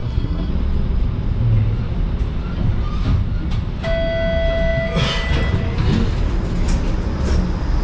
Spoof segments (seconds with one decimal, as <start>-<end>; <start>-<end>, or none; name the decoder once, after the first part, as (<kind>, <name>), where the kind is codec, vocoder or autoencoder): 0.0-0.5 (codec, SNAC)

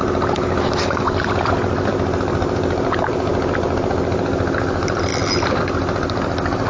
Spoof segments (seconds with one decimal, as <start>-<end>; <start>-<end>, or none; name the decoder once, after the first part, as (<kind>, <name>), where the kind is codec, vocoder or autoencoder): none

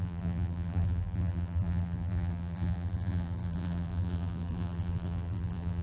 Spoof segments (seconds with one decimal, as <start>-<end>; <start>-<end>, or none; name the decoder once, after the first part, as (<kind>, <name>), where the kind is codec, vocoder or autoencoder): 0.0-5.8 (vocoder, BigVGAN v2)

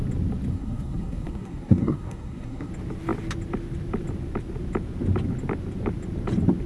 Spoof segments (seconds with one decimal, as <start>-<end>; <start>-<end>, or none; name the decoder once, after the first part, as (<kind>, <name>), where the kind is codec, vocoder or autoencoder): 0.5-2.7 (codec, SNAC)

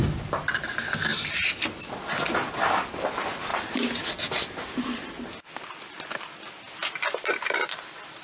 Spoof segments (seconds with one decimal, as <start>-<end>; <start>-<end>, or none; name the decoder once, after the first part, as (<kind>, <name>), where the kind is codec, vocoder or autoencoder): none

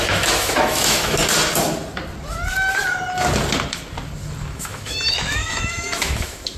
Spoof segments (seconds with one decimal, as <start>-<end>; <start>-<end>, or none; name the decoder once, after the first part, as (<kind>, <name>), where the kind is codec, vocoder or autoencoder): 0.0-1.2 (autoencoder, DAC-VAE); 4.4-6.6

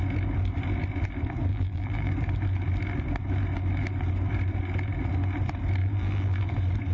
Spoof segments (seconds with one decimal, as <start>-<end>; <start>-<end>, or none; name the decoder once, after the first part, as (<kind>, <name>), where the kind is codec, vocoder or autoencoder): 1.5-2.1 (vocoder, BigVGAN v2); 5.8-6.5

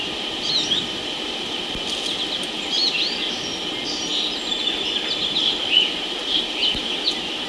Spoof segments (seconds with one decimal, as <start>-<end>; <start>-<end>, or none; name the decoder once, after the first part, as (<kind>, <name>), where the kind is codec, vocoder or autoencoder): none